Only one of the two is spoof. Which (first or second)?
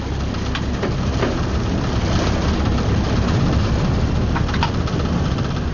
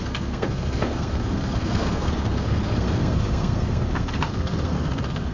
second